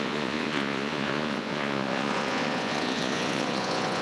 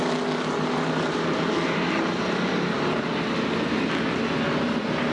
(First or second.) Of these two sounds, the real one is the second